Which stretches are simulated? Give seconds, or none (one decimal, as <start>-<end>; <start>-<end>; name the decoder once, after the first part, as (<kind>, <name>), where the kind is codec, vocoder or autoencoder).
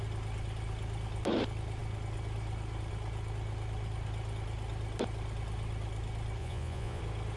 6.4-7.0 (vocoder, Vocos)